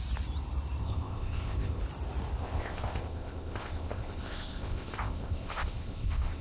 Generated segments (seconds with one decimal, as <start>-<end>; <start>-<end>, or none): 0.8-1.8; 2.4-6.4